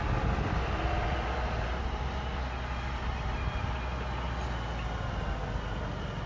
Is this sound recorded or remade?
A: recorded